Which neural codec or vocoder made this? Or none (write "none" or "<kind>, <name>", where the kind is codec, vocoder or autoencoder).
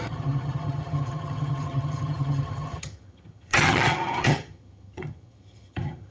vocoder, HiFi-GAN